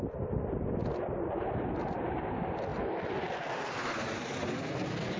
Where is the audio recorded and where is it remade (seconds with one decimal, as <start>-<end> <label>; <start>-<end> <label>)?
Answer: 0.0-5.2 recorded